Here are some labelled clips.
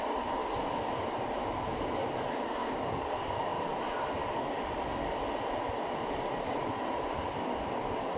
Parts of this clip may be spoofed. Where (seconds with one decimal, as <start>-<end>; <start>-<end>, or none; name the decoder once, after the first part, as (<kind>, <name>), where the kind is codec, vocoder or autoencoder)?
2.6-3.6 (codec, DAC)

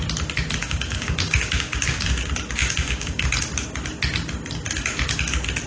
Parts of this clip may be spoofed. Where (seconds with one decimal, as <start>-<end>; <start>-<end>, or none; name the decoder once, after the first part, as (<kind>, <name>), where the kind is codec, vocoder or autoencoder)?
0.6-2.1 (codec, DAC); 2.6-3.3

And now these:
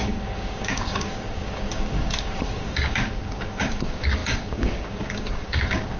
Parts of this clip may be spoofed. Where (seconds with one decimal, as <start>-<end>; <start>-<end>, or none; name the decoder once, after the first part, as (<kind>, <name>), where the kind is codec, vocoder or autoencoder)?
0.0-6.0 (codec, DAC)

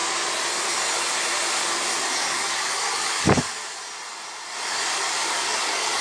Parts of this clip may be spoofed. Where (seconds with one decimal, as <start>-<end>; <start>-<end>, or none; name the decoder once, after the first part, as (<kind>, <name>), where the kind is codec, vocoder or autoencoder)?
2.0-3.6 (codec, DAC); 4.6-6.0

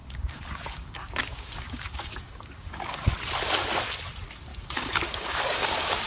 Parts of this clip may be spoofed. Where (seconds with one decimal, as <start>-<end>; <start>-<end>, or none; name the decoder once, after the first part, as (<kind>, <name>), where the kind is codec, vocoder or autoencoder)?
0.0-3.1 (codec, DAC); 4.5-6.1